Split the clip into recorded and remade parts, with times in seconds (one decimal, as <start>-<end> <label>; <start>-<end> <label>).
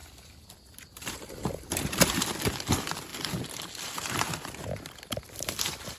0.0-3.1 remade; 3.1-4.1 recorded; 4.1-6.0 remade